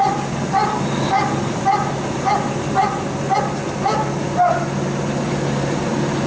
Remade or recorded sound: recorded